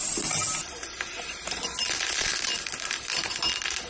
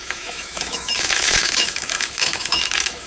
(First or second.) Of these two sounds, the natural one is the first